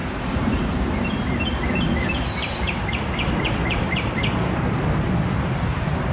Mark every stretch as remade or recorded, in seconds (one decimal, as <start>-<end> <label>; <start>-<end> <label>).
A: 0.0-4.2 remade; 4.2-4.9 recorded; 4.9-6.1 remade